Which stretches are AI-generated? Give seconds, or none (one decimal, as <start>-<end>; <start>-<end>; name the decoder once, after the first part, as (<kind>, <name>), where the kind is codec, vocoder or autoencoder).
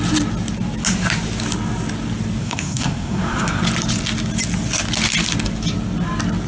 2.4-3.6 (codec, SNAC)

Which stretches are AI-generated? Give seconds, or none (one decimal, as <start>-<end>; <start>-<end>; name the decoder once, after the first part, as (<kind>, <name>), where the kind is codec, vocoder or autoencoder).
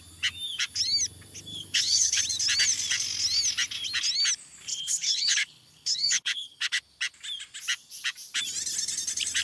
1.5-2.2 (codec, HILCodec); 4.7-6.8